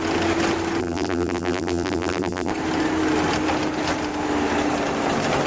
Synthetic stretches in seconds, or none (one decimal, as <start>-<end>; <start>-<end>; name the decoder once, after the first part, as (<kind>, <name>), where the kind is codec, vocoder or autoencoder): 0.8-2.5 (vocoder, BigVGAN v2)

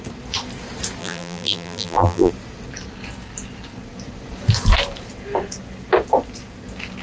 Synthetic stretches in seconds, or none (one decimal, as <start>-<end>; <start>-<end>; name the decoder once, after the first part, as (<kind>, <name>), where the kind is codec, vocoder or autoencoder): 1.0-2.3 (vocoder, BigVGAN v2)

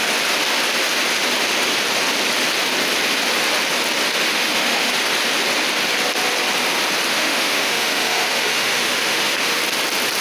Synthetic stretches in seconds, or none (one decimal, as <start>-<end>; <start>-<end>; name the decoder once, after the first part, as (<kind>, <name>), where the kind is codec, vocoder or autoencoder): 4.3-4.9 (autoencoder, DAC-VAE); 7.1-9.6

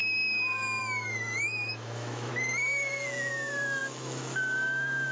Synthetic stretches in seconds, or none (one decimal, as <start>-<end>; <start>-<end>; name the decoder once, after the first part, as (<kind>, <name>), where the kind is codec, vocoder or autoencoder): 0.8-2.3 (autoencoder, DAC-VAE); 3.3-5.1

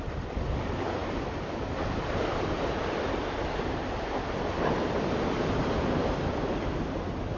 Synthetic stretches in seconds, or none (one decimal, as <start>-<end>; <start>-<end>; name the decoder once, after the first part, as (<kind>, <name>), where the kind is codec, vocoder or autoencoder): none

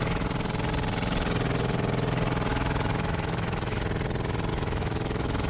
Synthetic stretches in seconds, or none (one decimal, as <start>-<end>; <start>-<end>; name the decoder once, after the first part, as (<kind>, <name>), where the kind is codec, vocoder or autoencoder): 2.5-3.8 (autoencoder, DAC-VAE); 4.5-5.5